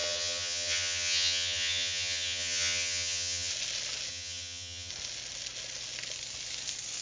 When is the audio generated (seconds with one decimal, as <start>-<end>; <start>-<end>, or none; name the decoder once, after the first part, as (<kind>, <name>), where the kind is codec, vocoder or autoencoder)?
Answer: 0.0-3.5 (vocoder, HiFi-GAN); 4.1-4.9